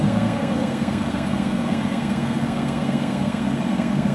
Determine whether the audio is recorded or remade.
remade